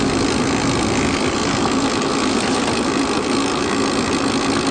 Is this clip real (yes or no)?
yes